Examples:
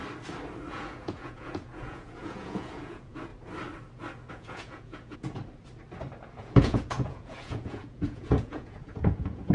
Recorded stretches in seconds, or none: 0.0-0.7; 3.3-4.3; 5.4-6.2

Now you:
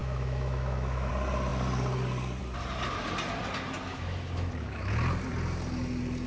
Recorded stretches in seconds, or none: 1.1-3.9; 4.9-6.3

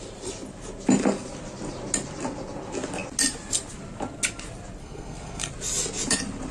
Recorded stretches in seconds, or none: 0.0-4.8; 5.5-6.5

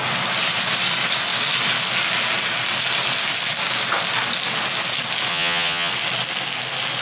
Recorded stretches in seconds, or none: 0.0-5.3; 5.9-7.0

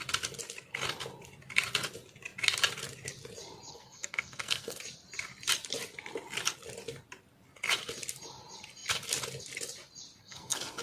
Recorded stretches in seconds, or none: 0.0-3.7; 4.8-10.2

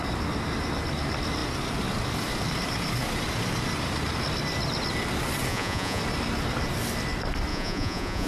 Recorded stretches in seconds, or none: 0.0-5.5; 6.0-7.5

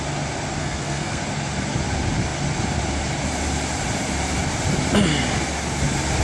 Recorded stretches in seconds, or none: 0.0-0.6; 1.2-6.2